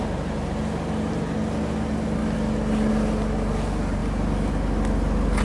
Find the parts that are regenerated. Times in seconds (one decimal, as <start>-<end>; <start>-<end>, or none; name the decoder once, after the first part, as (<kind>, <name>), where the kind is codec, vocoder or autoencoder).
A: none